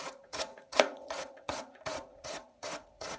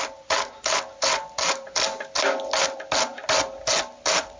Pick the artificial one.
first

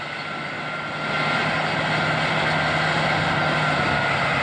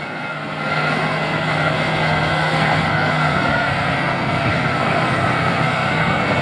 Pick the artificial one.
second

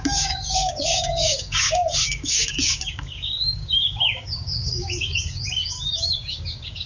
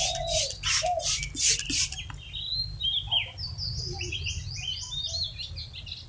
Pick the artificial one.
first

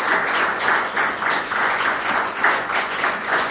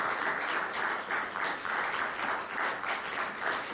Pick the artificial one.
first